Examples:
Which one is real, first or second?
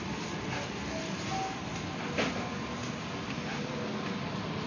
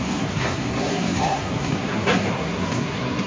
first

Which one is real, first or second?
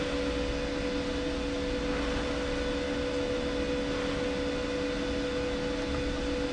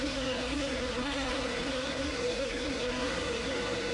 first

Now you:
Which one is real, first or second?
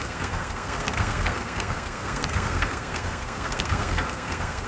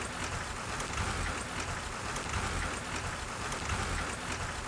second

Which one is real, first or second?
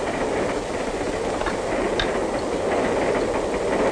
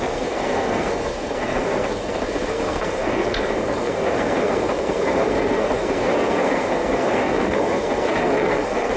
first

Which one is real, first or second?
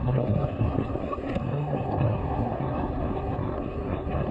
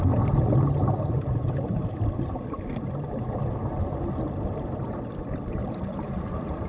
second